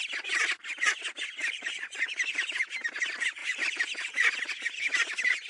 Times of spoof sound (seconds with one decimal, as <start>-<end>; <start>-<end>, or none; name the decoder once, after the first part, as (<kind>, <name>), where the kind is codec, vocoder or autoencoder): 1.4-2.5 (vocoder, BigVGAN v2); 3.4-4.3